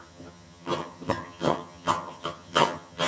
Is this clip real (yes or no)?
no